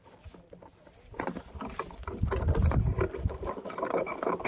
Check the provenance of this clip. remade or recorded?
recorded